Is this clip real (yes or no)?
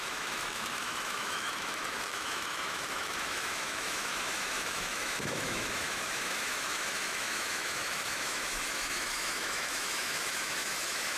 no